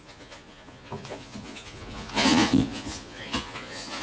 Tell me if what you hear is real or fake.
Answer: fake